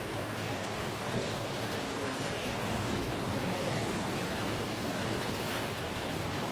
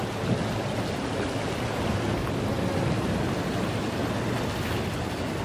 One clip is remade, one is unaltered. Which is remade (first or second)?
first